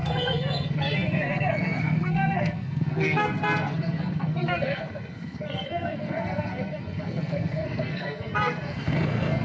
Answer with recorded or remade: remade